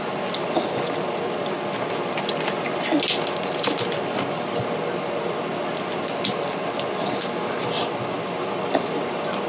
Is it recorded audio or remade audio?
recorded